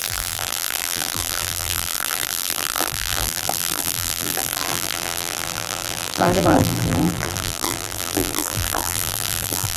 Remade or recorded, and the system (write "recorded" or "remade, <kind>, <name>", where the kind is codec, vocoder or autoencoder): remade, vocoder, BigVGAN v2